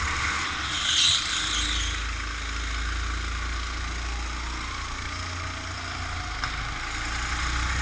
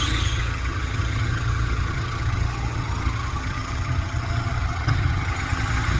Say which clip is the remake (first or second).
second